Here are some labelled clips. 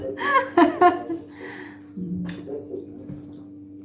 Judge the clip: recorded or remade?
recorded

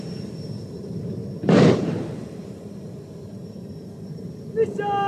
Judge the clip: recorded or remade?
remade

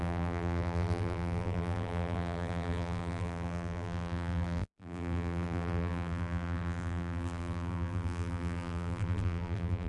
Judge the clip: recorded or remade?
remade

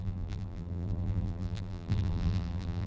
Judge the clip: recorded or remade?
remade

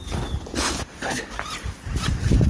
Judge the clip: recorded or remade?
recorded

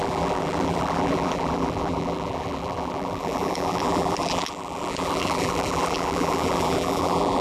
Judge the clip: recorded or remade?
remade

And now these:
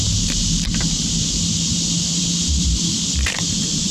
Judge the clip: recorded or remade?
remade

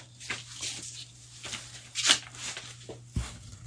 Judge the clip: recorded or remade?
recorded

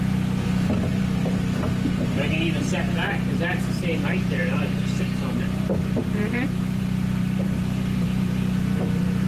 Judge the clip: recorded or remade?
remade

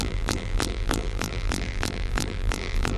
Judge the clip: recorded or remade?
remade